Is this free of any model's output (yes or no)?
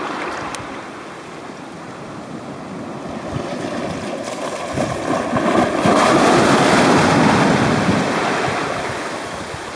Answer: yes